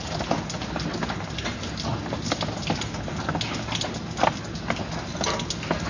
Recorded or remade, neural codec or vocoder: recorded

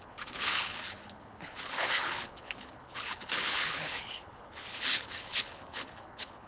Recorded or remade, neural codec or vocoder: remade, codec, HILCodec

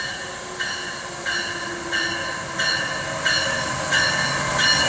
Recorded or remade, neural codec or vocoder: recorded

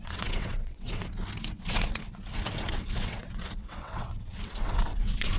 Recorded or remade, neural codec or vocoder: remade, vocoder, WaveNeXt